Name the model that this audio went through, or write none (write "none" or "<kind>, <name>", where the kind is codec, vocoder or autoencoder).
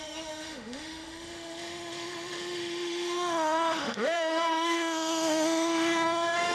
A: autoencoder, DAC-VAE